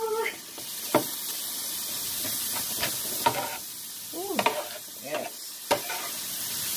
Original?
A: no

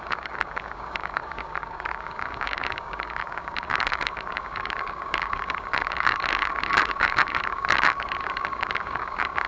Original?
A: no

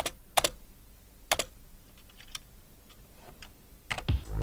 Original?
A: yes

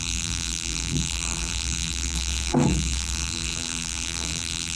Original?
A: no